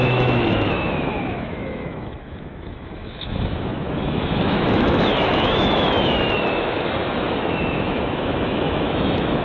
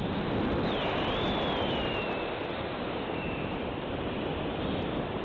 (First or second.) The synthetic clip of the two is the first